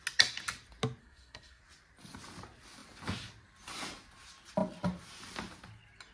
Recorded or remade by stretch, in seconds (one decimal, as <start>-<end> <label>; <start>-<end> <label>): 0.0-1.0 recorded; 1.0-1.6 remade; 1.6-6.1 recorded